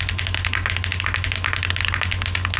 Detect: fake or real real